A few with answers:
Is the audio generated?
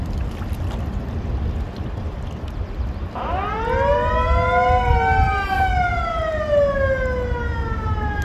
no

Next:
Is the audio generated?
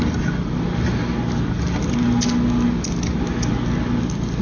no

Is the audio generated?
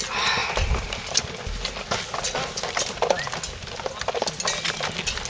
no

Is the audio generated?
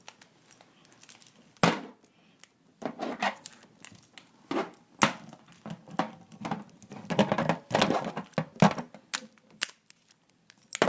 no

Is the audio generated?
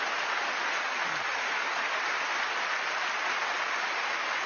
no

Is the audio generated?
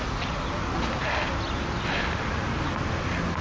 no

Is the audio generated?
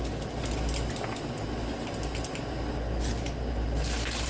no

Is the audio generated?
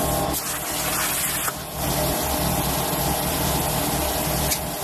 no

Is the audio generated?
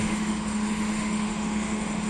yes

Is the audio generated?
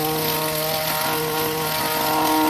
no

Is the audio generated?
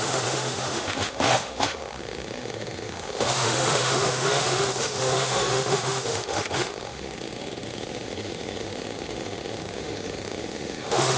yes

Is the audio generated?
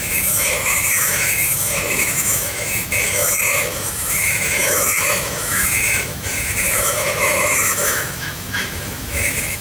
yes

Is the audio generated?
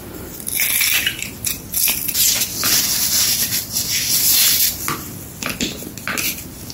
no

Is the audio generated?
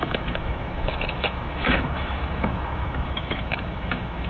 yes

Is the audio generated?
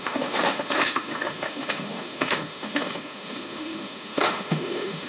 yes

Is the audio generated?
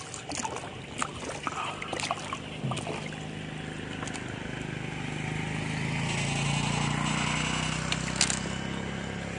no